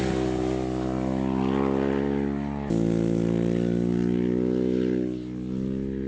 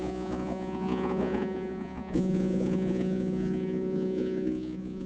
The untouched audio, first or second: first